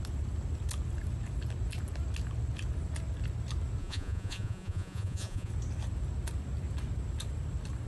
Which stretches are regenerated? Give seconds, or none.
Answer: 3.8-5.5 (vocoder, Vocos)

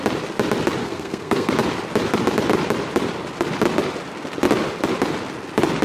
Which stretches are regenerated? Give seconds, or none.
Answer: 0.8-1.5 (codec, SNAC)

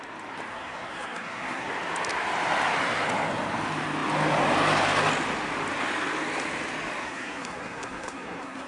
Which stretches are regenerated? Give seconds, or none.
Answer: 0.5-1.7 (codec, SNAC); 7.0-8.7